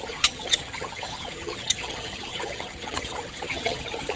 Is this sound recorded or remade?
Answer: remade